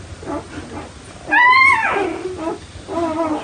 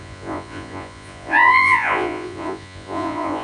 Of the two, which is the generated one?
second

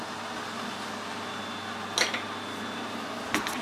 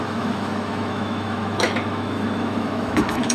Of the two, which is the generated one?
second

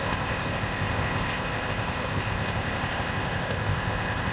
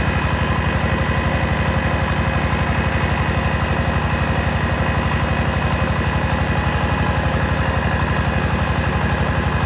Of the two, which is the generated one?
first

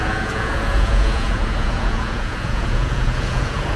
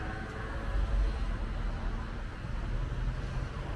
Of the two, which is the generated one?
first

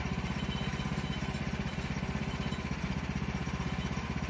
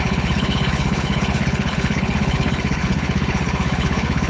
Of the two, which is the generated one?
second